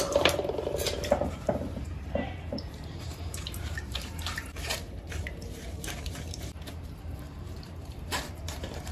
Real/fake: fake